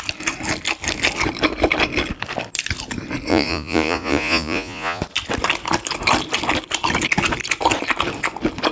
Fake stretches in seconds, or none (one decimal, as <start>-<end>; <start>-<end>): 3.3-5.0